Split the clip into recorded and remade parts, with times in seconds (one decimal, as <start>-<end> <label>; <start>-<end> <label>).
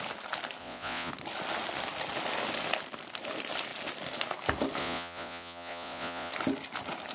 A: 0.0-0.6 recorded; 0.6-1.1 remade; 1.1-4.8 recorded; 4.8-6.3 remade; 6.3-7.1 recorded